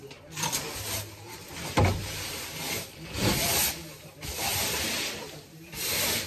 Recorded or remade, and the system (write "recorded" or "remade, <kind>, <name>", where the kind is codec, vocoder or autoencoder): recorded